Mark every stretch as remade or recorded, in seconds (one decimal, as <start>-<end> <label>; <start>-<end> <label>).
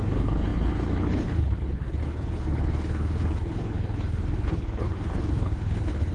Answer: 0.0-6.1 remade